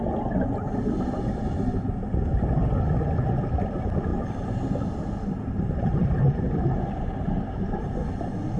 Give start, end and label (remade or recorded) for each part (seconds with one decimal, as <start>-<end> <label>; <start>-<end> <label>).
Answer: 0.0-4.1 recorded; 4.1-6.4 remade; 6.4-8.6 recorded